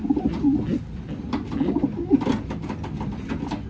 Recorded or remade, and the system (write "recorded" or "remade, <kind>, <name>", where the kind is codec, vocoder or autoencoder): recorded